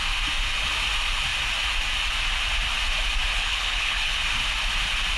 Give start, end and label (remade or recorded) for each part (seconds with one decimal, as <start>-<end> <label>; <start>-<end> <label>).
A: 0.0-3.3 recorded; 3.3-4.2 remade; 4.2-5.2 recorded